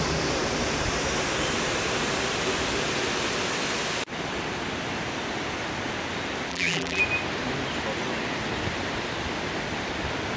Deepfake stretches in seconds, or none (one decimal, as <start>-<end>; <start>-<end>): 6.5-7.0